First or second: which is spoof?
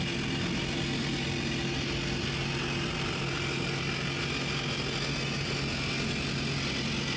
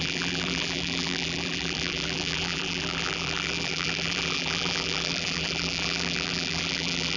second